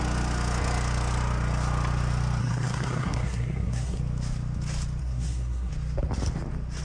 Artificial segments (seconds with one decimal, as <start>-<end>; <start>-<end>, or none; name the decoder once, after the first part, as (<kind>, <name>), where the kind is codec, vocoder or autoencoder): 2.4-4.0 (codec, SNAC); 5.0-5.7

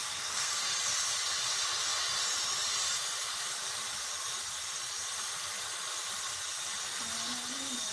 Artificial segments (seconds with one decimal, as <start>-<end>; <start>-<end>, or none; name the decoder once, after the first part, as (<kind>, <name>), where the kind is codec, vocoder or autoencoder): 0.0-0.7 (codec, SNAC)

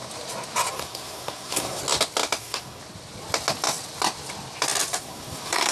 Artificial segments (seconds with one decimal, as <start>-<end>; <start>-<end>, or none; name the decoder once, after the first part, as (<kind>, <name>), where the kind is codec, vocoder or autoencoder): 0.7-1.8 (codec, SNAC); 2.4-2.8; 5.0-5.7

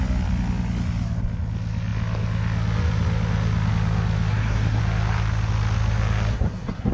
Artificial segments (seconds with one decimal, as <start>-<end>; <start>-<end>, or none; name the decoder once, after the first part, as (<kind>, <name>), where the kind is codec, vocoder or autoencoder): 4.3-4.8 (codec, SNAC); 6.3-6.9

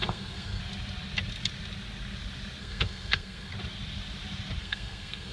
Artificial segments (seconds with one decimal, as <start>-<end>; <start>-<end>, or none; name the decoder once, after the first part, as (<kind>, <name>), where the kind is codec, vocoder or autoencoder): 0.0-0.6 (codec, SNAC); 2.6-3.5; 4.6-5.3